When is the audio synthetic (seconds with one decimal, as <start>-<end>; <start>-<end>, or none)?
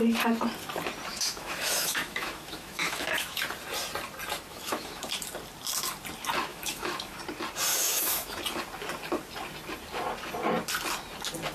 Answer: 1.1-3.4; 4.5-5.1; 6.5-7.2; 7.7-8.4